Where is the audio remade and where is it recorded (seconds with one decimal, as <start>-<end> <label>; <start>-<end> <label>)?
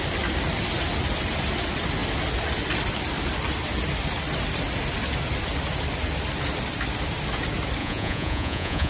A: 0.0-7.8 recorded; 7.8-8.9 remade